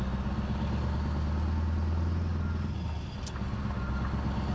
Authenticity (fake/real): real